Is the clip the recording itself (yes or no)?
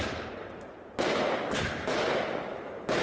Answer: yes